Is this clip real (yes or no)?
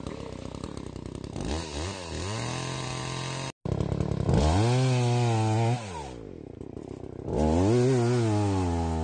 yes